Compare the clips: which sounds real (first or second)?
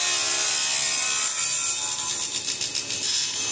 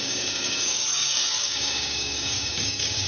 first